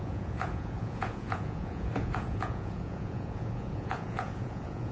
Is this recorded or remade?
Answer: remade